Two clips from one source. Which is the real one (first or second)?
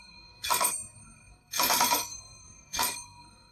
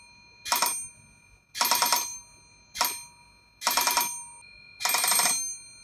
second